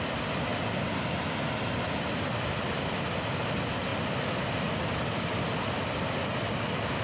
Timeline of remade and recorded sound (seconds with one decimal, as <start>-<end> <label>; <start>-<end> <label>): 0.0-7.0 recorded